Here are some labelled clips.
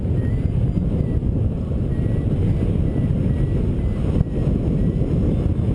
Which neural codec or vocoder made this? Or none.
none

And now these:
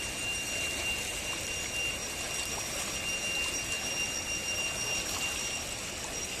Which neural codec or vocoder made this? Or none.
none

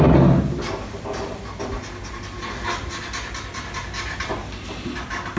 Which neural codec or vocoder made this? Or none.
none